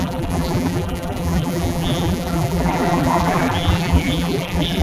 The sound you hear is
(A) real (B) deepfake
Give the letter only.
B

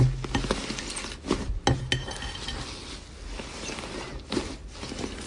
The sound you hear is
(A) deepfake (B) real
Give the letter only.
B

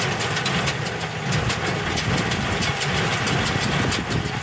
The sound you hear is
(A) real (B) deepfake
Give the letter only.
A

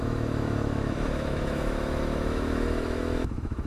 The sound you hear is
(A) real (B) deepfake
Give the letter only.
B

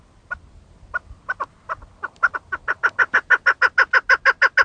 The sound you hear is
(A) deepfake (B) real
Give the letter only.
B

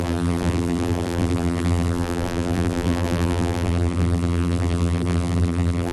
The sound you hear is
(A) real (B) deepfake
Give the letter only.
B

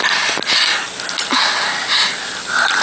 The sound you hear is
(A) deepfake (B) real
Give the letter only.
B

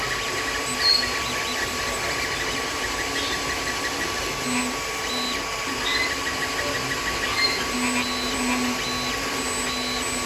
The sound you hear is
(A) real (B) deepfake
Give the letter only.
A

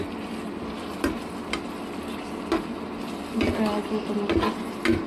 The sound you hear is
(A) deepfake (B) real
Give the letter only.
B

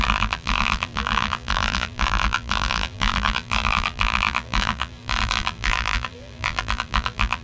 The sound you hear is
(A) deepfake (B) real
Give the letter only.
A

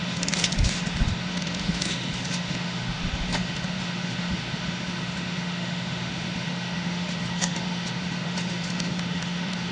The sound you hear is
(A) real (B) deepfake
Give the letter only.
B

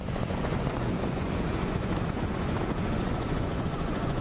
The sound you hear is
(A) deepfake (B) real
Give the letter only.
A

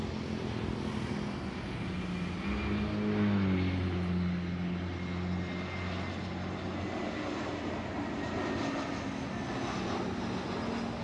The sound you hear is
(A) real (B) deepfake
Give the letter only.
A